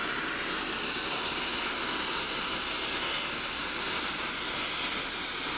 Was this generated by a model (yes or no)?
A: no